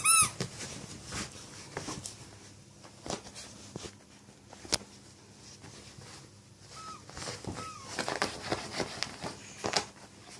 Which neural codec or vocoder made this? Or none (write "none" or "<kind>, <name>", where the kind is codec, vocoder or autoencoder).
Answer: none